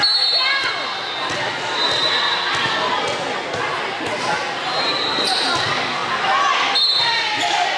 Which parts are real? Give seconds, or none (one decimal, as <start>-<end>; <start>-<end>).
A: 0.0-7.8